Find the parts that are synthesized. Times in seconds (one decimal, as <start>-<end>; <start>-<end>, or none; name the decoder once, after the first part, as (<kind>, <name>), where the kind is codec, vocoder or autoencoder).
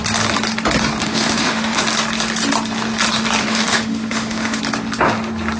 1.0-1.8 (autoencoder, DAC-VAE); 3.5-4.6